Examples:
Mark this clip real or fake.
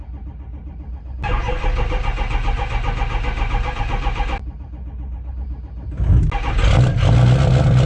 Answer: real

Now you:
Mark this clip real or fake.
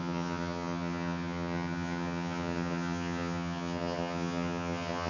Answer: fake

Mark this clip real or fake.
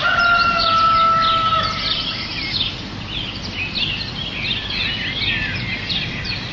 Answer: real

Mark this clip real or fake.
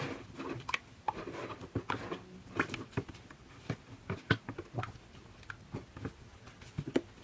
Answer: real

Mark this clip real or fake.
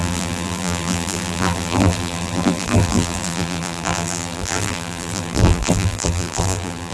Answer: fake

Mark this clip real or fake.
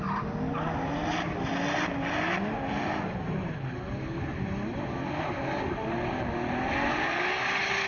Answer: real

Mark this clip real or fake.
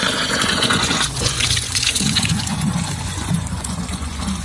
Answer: fake